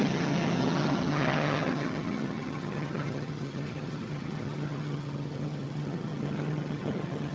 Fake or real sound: fake